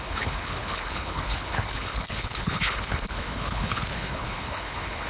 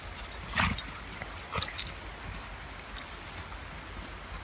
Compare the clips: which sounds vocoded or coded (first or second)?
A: first